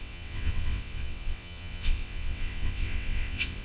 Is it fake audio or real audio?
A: fake